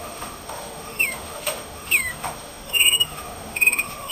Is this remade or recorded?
remade